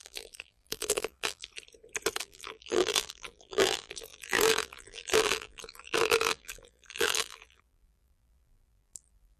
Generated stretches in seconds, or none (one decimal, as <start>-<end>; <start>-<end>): 0.0-1.5; 2.2-9.4